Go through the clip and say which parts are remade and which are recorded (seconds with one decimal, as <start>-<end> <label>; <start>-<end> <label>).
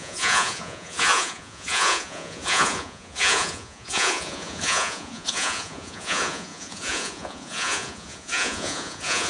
0.0-9.3 remade